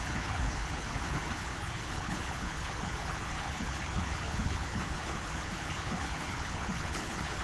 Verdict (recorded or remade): remade